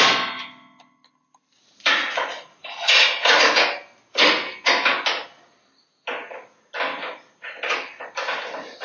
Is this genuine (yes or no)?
yes